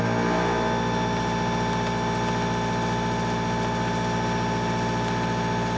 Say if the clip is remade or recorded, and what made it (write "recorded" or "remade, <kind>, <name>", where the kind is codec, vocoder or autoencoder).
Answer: recorded